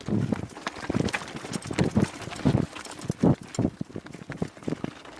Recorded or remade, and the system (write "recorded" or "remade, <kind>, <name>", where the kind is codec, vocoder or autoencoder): recorded